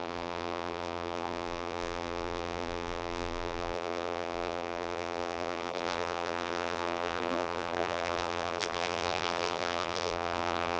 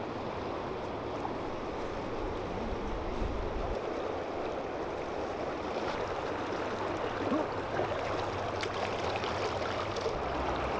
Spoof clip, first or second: first